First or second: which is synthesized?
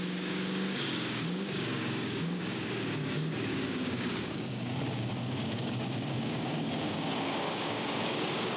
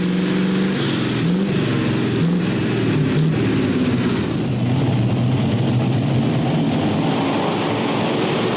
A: first